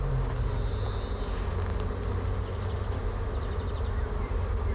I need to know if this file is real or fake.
real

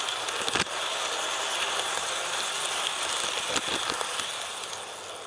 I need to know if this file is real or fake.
real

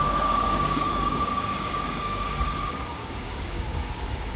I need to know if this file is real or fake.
fake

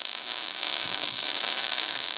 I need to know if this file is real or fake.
fake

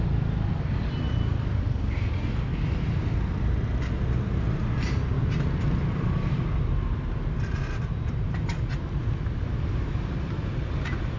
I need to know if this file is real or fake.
real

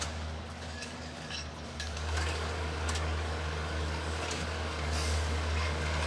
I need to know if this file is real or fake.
fake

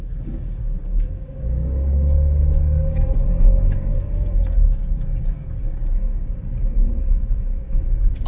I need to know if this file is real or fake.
fake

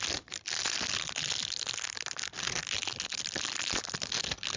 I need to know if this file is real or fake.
real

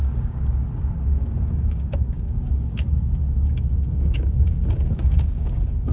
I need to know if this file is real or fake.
fake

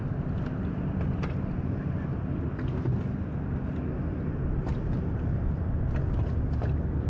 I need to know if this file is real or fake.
real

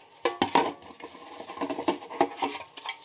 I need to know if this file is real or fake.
real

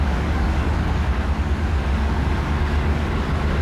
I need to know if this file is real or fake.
fake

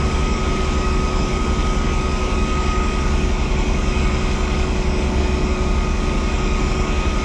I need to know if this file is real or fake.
fake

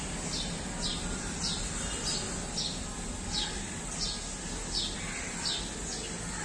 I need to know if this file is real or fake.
real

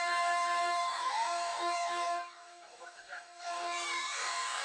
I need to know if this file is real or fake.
fake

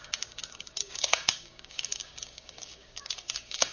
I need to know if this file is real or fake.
fake